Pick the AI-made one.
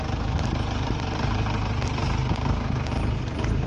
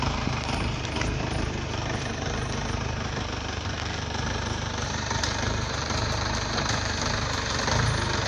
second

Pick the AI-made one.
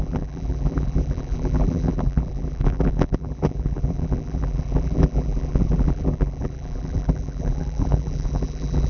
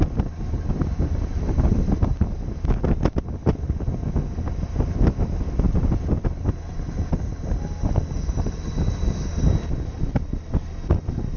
first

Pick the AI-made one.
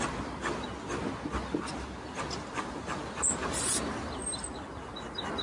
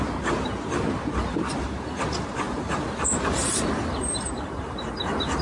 second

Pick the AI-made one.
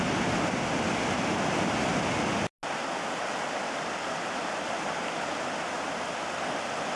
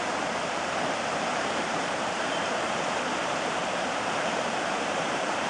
second